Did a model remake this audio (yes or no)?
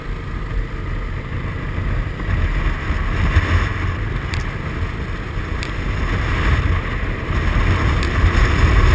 no